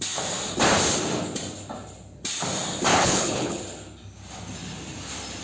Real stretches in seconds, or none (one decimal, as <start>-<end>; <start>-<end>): 0.0-2.9; 3.6-5.4